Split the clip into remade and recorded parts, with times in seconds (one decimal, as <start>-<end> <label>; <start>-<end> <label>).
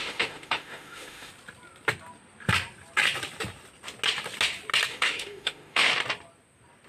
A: 0.0-1.3 remade; 1.3-4.9 recorded; 4.9-5.9 remade; 5.9-6.9 recorded